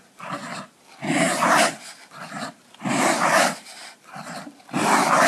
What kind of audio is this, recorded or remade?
remade